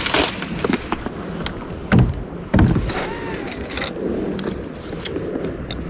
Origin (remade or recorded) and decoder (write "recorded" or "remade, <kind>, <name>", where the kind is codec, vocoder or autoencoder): recorded